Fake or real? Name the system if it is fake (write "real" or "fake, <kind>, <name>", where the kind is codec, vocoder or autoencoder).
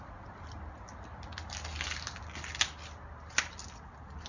real